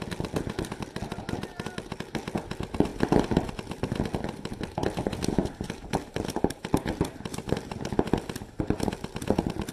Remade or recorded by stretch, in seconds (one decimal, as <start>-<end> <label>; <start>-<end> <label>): 0.0-9.7 recorded